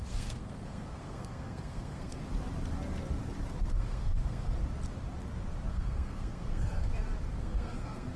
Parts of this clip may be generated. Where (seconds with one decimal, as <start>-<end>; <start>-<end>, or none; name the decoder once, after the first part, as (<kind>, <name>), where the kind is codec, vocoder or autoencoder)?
0.0-2.2 (codec, SNAC); 3.7-4.6; 5.7-6.9; 7.4-8.2